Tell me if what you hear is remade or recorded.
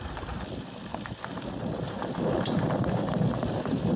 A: recorded